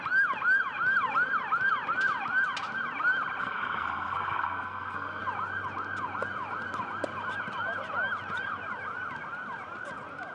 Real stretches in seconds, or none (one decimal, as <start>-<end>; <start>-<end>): 0.0-3.4; 5.2-10.3